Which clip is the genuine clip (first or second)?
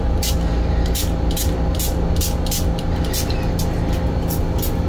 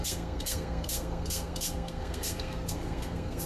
first